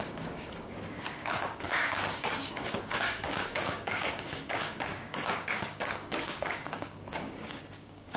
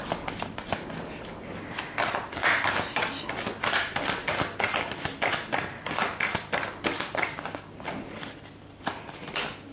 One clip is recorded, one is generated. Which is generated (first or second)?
first